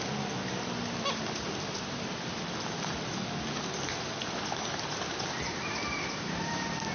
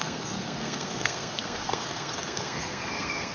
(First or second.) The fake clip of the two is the second